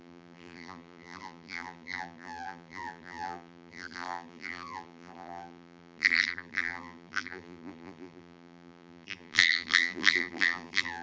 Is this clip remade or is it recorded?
remade